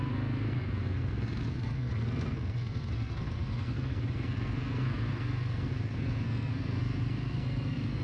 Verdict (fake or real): fake